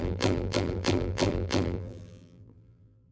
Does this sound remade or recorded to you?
remade